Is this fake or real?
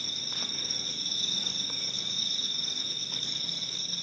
fake